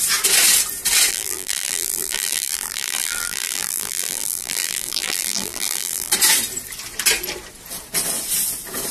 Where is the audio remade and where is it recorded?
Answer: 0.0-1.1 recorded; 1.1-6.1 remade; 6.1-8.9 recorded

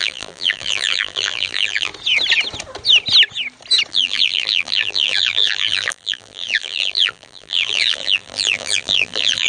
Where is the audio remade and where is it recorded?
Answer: 0.0-1.9 remade; 1.9-3.9 recorded; 3.9-9.5 remade

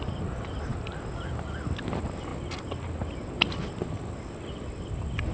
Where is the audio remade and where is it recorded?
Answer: 0.0-5.3 recorded